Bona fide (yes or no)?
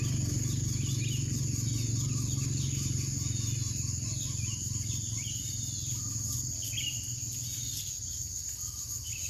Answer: yes